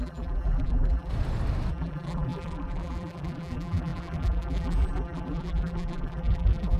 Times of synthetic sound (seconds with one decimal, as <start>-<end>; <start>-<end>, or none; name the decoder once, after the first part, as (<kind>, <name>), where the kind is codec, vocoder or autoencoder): 0.0-1.1 (vocoder, BigVGAN v2); 1.7-6.8